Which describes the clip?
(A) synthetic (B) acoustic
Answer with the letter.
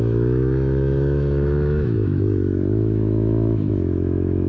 A